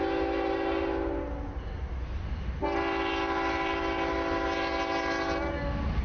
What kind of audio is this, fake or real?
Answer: real